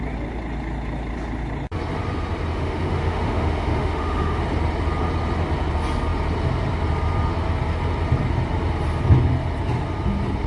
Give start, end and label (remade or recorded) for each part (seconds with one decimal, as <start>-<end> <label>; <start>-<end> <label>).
0.0-2.5 recorded; 2.5-4.4 remade; 4.4-10.5 recorded